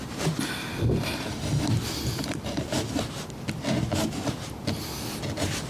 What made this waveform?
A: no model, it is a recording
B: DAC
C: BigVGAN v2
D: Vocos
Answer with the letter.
A